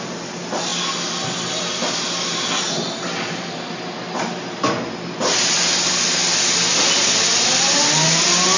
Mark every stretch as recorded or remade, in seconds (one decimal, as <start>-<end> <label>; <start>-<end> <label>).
0.0-8.6 recorded